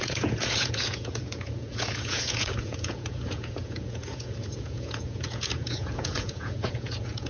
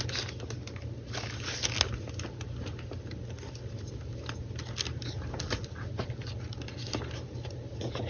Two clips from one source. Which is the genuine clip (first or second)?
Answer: second